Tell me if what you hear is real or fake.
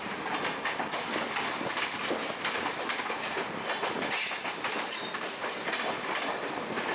real